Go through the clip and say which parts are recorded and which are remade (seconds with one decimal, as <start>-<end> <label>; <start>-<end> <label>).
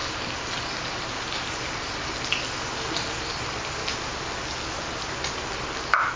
0.0-6.2 recorded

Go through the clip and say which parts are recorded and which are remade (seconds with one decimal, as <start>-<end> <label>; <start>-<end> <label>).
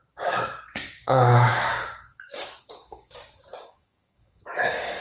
0.0-5.0 remade